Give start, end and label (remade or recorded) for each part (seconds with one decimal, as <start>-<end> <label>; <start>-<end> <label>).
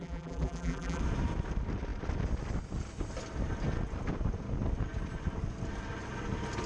0.0-1.0 remade; 1.0-6.7 recorded